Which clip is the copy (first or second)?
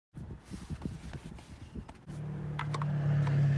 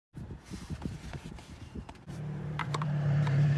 second